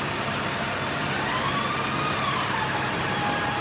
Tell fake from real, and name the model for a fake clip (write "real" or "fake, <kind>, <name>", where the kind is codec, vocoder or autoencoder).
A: real